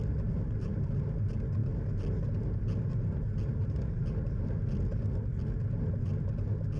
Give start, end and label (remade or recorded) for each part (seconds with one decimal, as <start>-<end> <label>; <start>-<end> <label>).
0.0-6.8 recorded